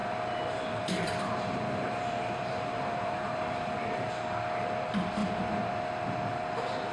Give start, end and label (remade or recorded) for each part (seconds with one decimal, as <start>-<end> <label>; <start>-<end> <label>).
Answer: 0.0-4.1 remade; 4.1-5.2 recorded; 5.2-5.7 remade; 5.7-6.9 recorded